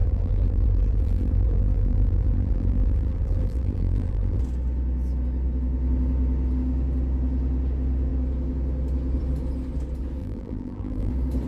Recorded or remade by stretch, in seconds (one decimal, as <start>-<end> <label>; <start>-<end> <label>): 0.0-4.4 remade; 4.4-10.2 recorded; 10.2-11.1 remade; 11.1-11.5 recorded